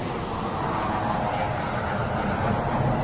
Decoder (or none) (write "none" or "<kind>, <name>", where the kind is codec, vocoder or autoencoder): none